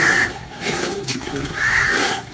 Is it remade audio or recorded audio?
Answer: remade